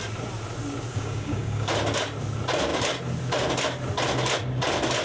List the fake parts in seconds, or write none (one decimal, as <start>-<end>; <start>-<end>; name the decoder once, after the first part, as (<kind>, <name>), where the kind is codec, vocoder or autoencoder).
0.9-1.7 (codec, DAC)